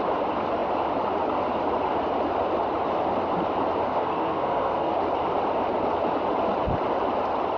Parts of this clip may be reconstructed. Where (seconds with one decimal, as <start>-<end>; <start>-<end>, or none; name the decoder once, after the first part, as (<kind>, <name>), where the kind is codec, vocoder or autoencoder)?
3.9-4.9 (codec, SNAC)

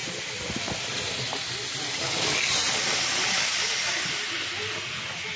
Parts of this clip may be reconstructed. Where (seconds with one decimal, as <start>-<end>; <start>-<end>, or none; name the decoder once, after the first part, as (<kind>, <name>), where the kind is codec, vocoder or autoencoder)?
none

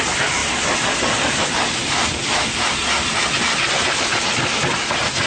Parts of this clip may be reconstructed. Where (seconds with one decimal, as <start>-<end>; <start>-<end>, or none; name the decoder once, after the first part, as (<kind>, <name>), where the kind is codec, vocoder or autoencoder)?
none